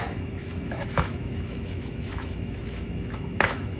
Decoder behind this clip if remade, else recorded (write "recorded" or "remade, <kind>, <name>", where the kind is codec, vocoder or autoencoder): remade, autoencoder, DAC-VAE